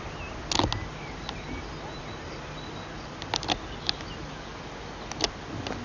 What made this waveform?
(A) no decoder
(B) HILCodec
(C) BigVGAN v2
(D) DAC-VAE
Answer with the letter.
A